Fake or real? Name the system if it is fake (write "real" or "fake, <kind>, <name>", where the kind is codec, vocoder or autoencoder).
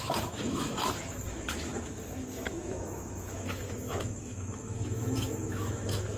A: fake, autoencoder, DAC-VAE